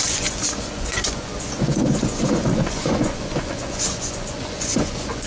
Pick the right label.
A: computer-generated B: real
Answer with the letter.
A